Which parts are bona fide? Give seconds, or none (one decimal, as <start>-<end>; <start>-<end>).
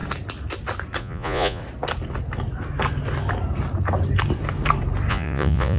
0.0-1.0; 1.6-5.1